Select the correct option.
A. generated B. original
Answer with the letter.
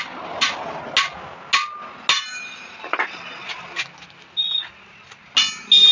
B